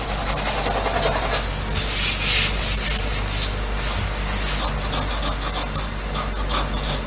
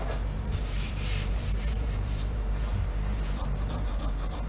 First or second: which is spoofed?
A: second